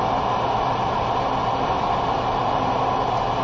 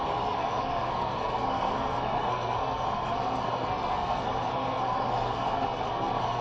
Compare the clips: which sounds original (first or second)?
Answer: first